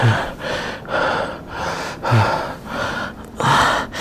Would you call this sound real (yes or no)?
yes